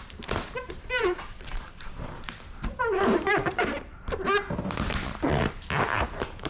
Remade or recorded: remade